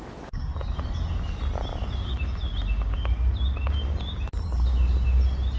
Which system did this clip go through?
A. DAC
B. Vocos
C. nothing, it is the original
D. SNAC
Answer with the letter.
C